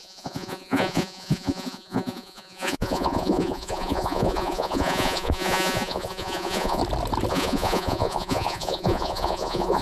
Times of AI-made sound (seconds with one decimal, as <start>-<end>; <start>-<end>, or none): 0.0-6.8; 7.3-9.8